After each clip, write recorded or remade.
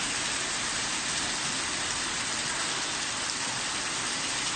recorded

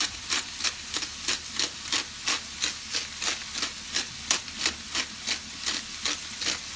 recorded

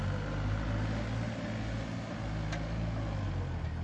recorded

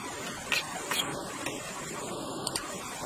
recorded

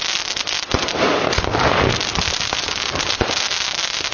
recorded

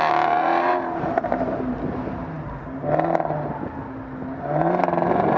recorded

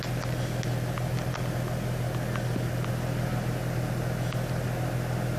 recorded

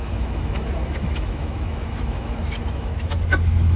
remade